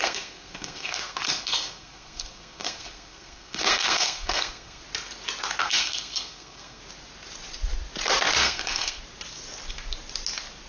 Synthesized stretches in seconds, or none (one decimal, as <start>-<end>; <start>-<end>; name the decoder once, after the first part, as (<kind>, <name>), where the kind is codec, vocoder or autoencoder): 0.0-4.8 (codec, SNAC); 5.6-6.8; 8.4-9.0